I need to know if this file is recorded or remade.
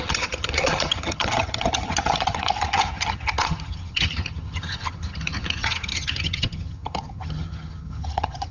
remade